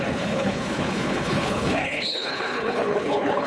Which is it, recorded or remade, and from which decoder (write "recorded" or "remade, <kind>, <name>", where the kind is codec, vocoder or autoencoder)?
remade, codec, HILCodec